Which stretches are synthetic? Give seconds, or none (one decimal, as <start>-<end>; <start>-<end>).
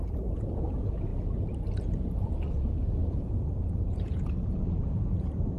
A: 0.0-1.1; 3.1-5.6